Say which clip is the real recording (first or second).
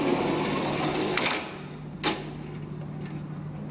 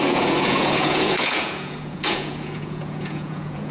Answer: first